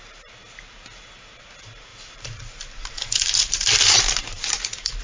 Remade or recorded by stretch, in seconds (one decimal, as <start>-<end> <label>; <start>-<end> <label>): 0.0-1.9 recorded; 1.9-5.0 remade